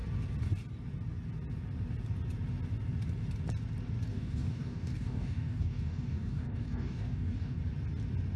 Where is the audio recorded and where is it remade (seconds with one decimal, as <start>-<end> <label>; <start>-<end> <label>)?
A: 0.0-4.1 recorded; 4.1-7.6 remade; 7.6-8.4 recorded